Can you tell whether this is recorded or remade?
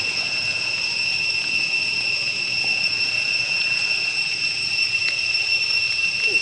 remade